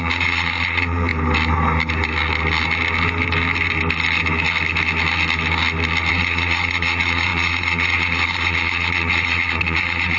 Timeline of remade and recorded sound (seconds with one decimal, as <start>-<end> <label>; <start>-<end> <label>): 0.0-1.1 remade; 1.1-6.1 recorded; 6.1-10.2 remade